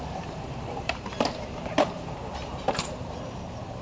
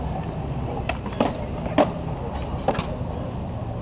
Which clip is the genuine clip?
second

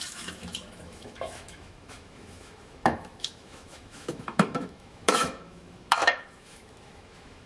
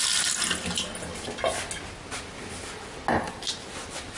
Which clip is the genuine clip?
second